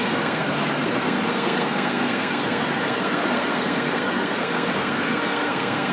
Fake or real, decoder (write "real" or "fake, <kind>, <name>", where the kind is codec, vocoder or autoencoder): fake, codec, SNAC